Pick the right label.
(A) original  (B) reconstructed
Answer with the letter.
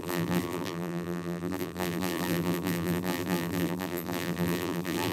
B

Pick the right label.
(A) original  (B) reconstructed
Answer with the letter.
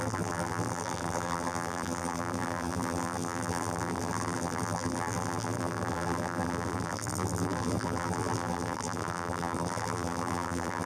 B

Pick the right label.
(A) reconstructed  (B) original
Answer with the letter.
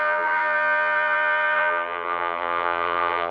A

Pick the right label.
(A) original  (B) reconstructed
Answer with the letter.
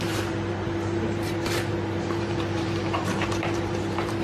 B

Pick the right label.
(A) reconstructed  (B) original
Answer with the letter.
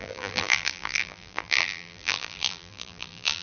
A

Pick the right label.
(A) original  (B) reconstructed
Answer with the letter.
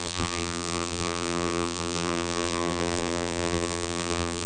B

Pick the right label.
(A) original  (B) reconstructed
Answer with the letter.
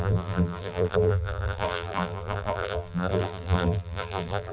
B